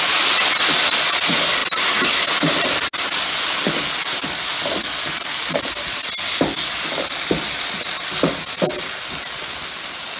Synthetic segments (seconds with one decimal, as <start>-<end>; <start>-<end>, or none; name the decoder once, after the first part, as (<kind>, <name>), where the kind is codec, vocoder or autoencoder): none